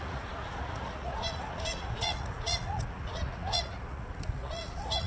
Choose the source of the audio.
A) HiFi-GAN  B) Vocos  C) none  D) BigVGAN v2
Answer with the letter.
B